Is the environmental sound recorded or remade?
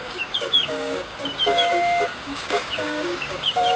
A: remade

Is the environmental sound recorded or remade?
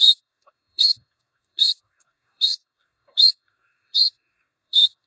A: remade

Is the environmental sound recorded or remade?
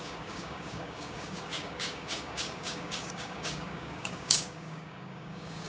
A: remade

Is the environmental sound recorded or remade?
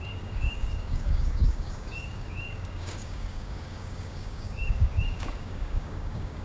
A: remade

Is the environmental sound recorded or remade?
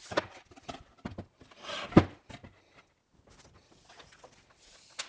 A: recorded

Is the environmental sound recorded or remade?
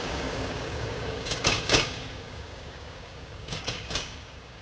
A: remade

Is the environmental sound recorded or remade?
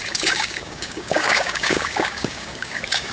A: remade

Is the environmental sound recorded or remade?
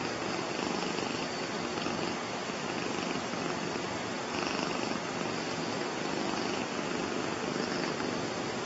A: recorded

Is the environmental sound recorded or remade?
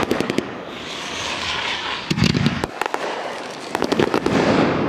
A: remade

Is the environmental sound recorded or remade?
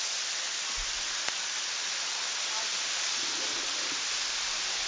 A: recorded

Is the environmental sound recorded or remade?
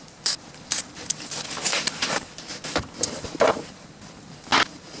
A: recorded